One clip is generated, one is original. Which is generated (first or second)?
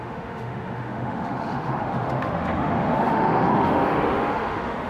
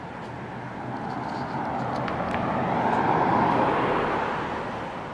first